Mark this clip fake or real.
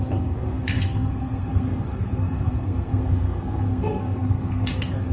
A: fake